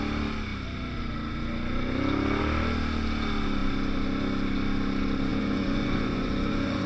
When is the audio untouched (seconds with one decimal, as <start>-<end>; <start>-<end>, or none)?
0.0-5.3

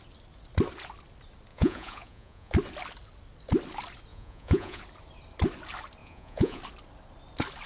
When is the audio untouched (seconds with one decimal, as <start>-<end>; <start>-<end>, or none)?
0.0-1.5; 2.5-4.1; 4.8-6.0; 6.6-7.7

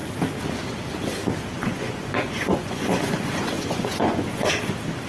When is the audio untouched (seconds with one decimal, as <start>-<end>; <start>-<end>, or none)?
0.0-1.5; 4.5-5.1

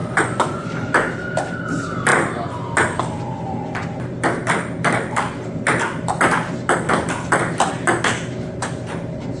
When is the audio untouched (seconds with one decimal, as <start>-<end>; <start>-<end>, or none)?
0.7-9.4

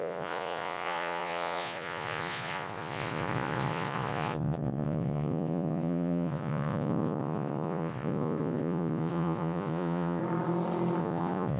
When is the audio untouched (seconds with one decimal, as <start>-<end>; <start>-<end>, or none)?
10.2-11.0

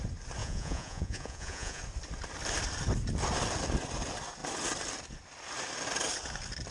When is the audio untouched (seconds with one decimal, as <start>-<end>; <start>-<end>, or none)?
0.0-0.4; 1.8-6.7

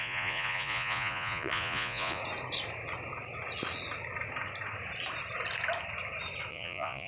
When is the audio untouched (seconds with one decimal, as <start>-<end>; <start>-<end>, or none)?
2.2-6.5

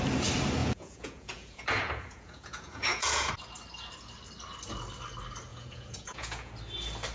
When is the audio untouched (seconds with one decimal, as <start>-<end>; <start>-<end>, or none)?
0.0-0.6; 3.3-5.5; 6.5-7.1